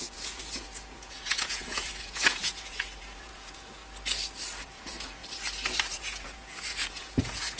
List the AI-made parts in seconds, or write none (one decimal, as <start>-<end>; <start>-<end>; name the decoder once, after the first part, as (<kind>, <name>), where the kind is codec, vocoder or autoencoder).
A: 0.0-3.8 (vocoder, Vocos); 4.6-5.2; 5.9-7.6